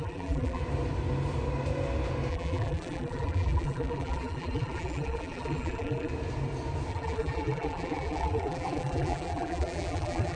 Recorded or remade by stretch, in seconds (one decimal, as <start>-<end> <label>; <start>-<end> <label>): 0.0-0.6 remade; 0.6-2.3 recorded; 2.3-6.1 remade; 6.1-6.9 recorded; 6.9-10.4 remade